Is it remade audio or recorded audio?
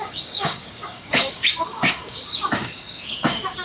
remade